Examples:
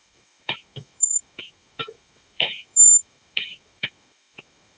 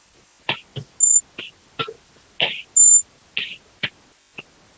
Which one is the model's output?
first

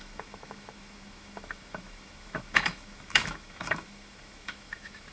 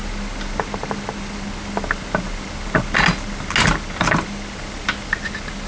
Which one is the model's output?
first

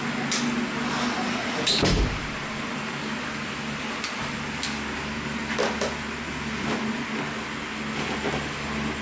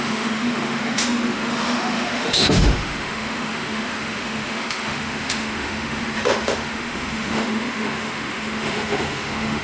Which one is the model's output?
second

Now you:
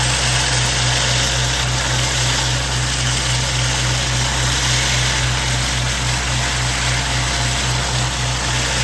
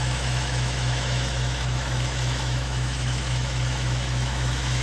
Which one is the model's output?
second